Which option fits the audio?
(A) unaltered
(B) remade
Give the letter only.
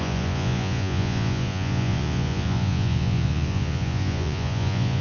B